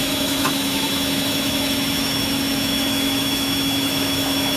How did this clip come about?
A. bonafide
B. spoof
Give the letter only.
B